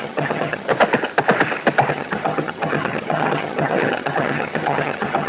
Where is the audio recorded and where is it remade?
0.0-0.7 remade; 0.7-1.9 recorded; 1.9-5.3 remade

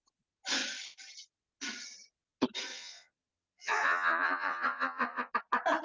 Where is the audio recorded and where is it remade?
0.0-2.7 recorded; 2.7-5.3 remade; 5.3-5.8 recorded

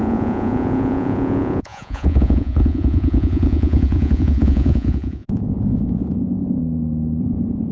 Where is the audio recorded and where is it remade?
0.0-6.6 remade; 6.6-7.2 recorded; 7.2-7.7 remade

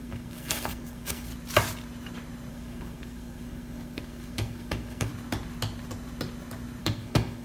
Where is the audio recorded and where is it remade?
0.0-1.3 remade; 1.3-2.5 recorded; 2.5-5.1 remade; 5.1-6.8 recorded; 6.8-7.4 remade